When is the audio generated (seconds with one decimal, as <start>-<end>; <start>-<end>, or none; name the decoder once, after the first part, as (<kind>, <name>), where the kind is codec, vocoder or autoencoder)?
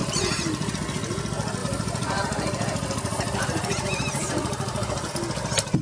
0.0-0.7 (vocoder, BigVGAN v2); 1.6-5.1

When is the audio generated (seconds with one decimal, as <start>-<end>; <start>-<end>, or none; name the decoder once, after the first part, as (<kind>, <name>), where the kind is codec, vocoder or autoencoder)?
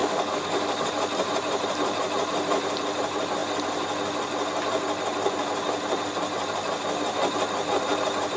0.0-0.9 (codec, DAC)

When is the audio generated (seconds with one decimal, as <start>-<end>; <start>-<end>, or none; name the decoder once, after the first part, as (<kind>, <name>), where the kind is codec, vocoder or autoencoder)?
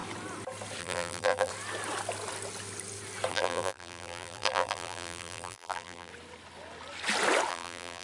0.8-1.5 (vocoder, BigVGAN v2); 3.3-6.1; 7.5-8.0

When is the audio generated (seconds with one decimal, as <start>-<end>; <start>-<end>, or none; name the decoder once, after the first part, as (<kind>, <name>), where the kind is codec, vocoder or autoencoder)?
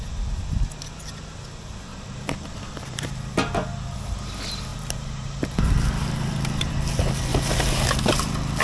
1.9-3.1 (vocoder, BigVGAN v2); 4.7-6.7